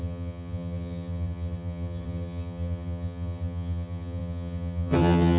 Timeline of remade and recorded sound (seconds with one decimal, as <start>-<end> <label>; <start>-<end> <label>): 0.0-5.4 remade